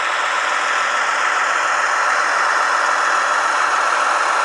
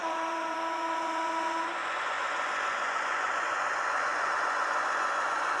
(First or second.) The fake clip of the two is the second